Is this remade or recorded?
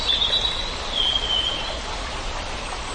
recorded